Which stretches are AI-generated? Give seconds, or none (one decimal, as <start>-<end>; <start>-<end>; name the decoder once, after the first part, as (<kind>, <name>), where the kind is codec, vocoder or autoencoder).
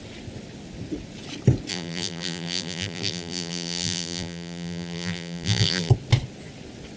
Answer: 1.7-5.9 (vocoder, BigVGAN v2)